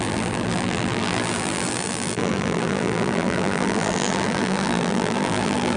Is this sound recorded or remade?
remade